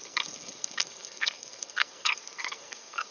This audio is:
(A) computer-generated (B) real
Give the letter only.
A